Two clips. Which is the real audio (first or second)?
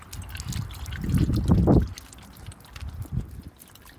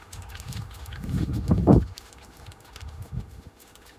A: first